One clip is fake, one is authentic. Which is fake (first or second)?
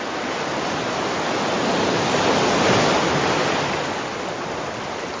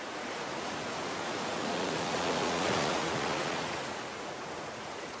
second